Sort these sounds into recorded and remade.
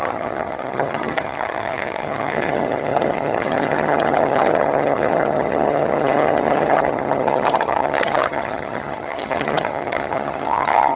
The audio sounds remade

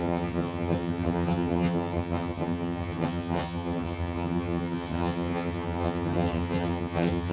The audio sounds remade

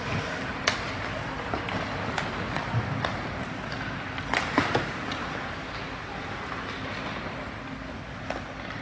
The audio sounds recorded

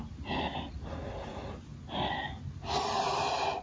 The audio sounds recorded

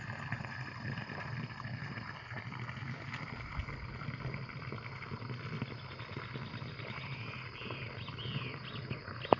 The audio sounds recorded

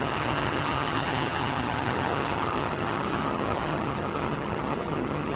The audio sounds remade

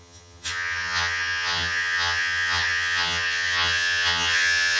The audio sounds remade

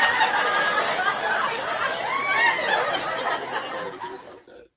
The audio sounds recorded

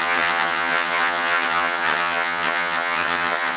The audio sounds remade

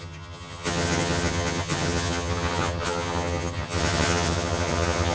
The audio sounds remade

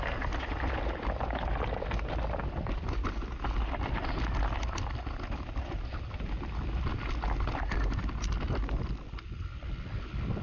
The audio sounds recorded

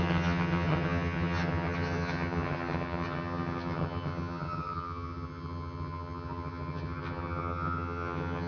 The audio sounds remade